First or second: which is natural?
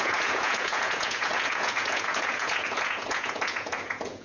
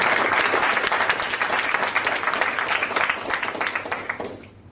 second